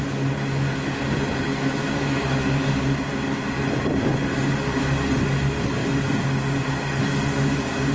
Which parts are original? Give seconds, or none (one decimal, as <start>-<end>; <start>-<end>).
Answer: 0.0-1.5; 2.7-7.9